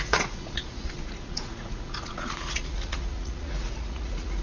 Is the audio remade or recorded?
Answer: remade